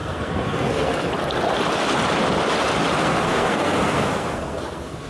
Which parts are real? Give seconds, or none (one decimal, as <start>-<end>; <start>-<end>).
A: 1.1-3.0